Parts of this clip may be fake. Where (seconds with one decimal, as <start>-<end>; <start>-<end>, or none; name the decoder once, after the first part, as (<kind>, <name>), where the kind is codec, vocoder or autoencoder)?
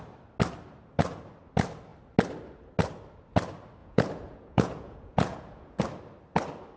3.8-5.8 (vocoder, Vocos)